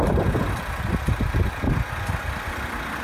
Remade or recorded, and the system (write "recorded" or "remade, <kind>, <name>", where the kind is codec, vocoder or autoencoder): recorded